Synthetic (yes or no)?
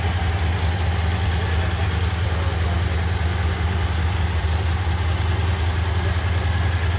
no